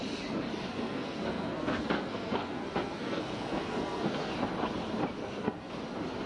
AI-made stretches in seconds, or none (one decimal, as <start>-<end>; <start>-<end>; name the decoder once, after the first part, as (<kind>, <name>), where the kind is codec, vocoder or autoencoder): 0.6-4.3 (codec, SNAC); 5.2-5.7

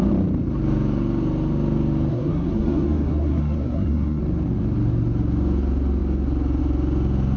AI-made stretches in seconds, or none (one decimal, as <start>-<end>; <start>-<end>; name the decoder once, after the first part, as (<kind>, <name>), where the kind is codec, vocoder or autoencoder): 2.1-4.2 (codec, SNAC)